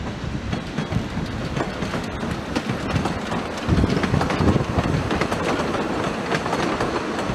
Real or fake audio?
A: real